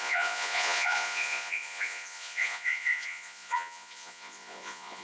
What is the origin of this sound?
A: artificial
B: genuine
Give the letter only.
A